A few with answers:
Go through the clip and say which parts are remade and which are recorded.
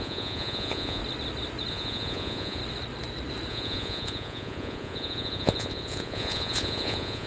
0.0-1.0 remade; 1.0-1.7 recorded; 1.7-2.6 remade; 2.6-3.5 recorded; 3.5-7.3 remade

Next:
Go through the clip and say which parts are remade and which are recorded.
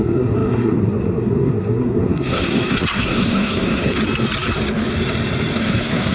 0.0-4.0 remade; 4.0-5.6 recorded; 5.6-6.1 remade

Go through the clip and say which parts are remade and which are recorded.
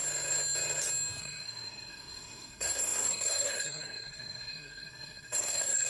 0.0-1.2 recorded; 1.2-5.9 remade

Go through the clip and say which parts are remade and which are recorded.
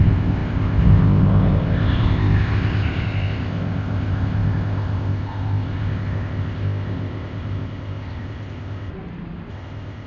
0.0-8.9 remade; 8.9-9.5 recorded; 9.5-10.1 remade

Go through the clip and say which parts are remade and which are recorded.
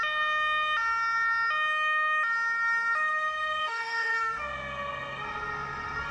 0.0-3.6 recorded; 3.6-4.4 remade; 4.4-6.1 recorded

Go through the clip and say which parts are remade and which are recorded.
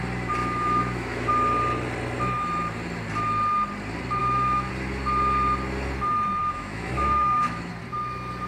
0.0-0.4 recorded; 0.4-1.3 remade; 1.3-4.2 recorded; 4.2-4.7 remade; 4.7-6.4 recorded; 6.4-7.7 remade; 7.7-8.5 recorded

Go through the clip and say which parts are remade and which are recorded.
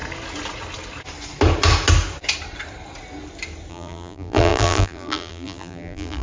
0.0-3.7 recorded; 3.7-6.2 remade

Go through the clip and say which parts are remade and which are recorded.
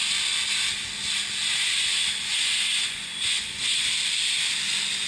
0.0-1.4 recorded; 1.4-3.9 remade; 3.9-5.1 recorded